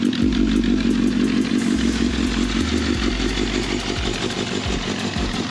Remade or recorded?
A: recorded